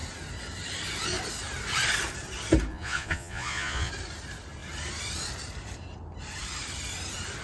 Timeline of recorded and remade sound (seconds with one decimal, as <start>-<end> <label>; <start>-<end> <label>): 0.0-2.7 recorded; 2.7-3.9 remade; 3.9-7.4 recorded

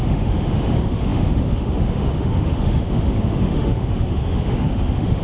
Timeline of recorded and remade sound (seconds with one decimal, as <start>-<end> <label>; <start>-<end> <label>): 0.0-5.2 remade